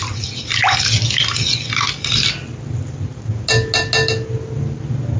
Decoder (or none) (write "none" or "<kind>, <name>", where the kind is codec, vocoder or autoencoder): none